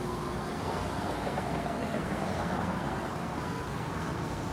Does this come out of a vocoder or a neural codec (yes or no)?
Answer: yes